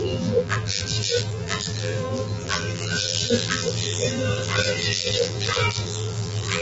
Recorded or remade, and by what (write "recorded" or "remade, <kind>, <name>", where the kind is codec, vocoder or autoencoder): remade, vocoder, BigVGAN v2